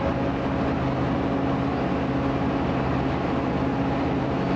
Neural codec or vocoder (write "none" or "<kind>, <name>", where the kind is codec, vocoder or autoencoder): none